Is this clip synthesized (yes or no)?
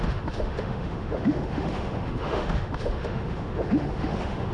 yes